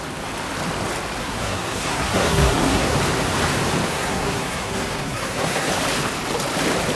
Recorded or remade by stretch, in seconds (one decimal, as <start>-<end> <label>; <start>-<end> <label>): 0.0-1.2 recorded; 1.2-3.0 remade; 3.0-3.9 recorded; 3.9-5.7 remade; 5.7-6.9 recorded